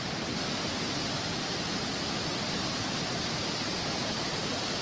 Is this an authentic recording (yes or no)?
yes